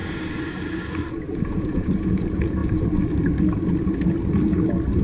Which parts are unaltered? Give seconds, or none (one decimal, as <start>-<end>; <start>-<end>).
0.0-1.1; 2.6-5.0